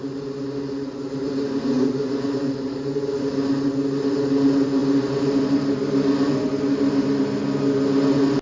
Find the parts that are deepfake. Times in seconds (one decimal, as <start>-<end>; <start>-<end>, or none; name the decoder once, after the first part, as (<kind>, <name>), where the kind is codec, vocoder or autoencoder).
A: none